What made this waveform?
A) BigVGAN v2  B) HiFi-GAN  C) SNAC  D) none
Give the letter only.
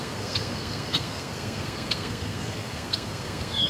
C